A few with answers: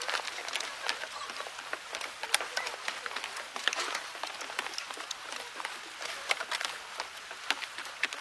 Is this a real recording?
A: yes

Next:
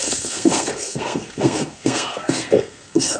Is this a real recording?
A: no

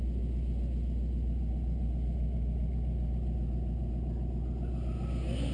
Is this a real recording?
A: yes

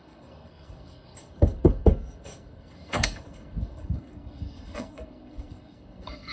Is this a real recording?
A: no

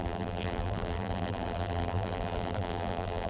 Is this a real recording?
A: no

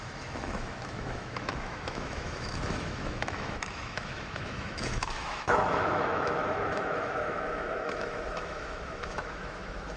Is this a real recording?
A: no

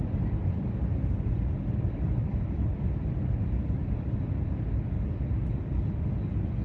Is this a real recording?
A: yes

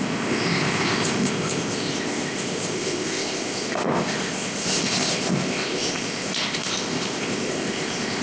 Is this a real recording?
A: no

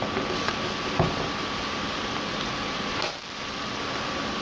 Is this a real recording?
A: yes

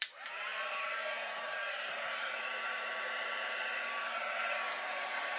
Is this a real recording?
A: no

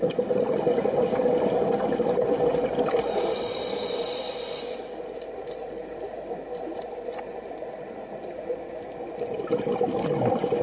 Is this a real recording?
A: yes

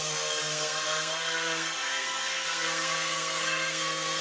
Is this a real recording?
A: no